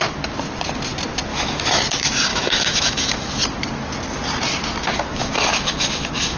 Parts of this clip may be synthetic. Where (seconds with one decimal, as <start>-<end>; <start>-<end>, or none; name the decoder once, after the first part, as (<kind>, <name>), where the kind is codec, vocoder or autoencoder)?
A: 1.3-1.8 (autoencoder, DAC-VAE); 2.3-3.4; 5.1-6.4